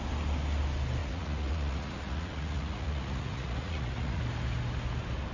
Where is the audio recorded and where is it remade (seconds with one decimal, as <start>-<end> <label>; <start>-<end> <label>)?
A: 0.0-1.0 recorded; 1.0-4.2 remade; 4.2-5.3 recorded

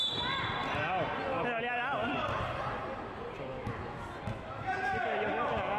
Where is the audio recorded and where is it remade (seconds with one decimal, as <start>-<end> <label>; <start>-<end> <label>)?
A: 0.0-5.8 recorded

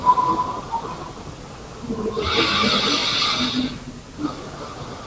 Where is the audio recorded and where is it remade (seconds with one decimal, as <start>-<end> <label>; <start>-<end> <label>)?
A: 0.0-5.1 recorded

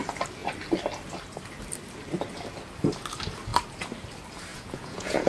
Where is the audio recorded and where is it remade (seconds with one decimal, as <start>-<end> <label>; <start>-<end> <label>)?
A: 0.0-4.5 recorded; 4.5-5.3 remade

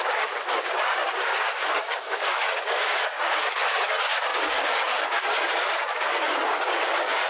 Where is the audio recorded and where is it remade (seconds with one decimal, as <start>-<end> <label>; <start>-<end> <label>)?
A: 0.0-7.3 remade